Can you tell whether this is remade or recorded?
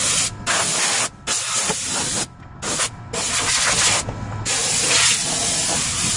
recorded